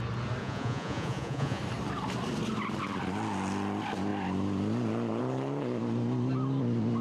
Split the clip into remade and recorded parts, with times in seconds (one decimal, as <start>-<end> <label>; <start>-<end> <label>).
0.0-0.4 recorded; 0.4-1.6 remade; 1.6-7.0 recorded